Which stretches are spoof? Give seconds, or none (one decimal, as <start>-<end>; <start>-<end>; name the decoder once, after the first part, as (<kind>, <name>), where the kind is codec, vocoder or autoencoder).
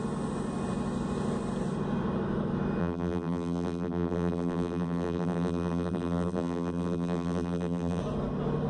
2.8-8.0 (vocoder, BigVGAN v2)